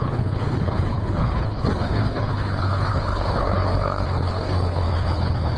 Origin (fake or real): fake